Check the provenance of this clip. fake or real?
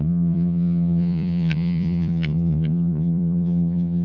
fake